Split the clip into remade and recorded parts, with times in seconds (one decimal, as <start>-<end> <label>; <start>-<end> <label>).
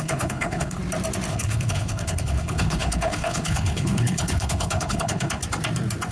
0.0-0.8 remade; 0.8-1.3 recorded; 1.3-5.4 remade; 5.4-6.1 recorded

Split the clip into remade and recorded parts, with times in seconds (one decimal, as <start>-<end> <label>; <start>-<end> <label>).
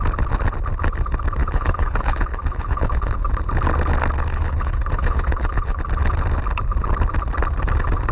0.0-1.4 recorded; 1.4-3.2 remade; 3.2-4.3 recorded; 4.3-5.8 remade; 5.8-8.1 recorded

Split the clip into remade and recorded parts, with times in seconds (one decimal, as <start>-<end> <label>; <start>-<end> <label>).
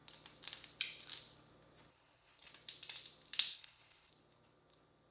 0.0-1.9 recorded; 1.9-2.5 remade; 2.5-3.5 recorded; 3.5-4.1 remade; 4.1-5.1 recorded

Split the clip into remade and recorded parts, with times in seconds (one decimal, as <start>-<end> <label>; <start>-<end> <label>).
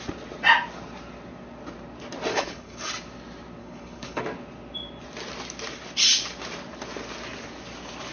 0.0-2.3 recorded; 2.3-2.9 remade; 2.9-3.6 recorded; 3.6-4.2 remade; 4.2-8.1 recorded